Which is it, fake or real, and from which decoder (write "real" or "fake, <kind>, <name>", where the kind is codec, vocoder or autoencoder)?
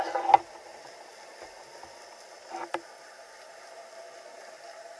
real